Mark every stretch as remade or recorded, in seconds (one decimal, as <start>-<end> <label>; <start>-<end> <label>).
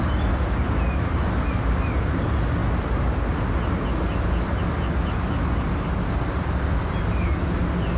0.0-8.0 recorded